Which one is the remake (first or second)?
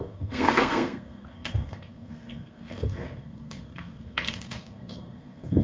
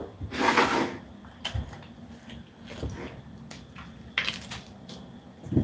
first